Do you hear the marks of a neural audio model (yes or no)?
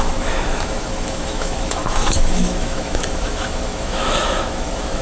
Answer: yes